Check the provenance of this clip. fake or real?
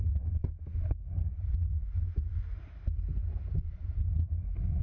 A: real